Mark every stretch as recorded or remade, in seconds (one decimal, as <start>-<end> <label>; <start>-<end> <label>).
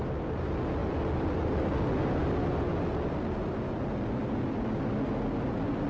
0.0-5.9 recorded